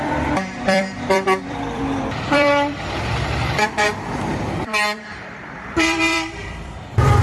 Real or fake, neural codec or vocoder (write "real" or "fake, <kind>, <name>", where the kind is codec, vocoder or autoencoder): fake, vocoder, BigVGAN v2